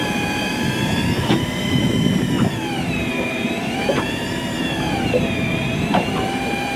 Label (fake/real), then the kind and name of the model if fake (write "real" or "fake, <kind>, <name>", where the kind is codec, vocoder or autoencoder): fake, vocoder, BigVGAN v2